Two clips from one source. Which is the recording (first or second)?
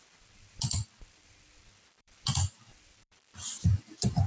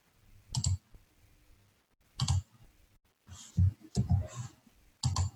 second